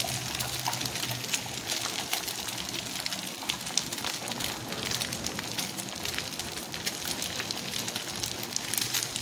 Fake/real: real